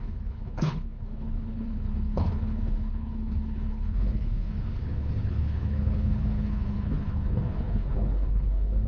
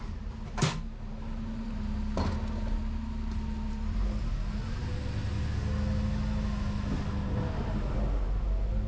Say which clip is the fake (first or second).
first